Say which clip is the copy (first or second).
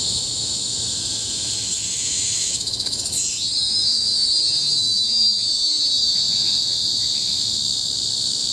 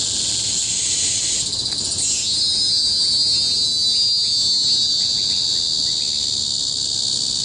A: first